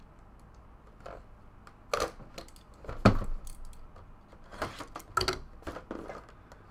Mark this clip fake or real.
real